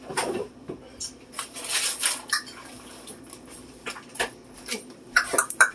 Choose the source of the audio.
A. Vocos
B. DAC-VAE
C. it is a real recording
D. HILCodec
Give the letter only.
C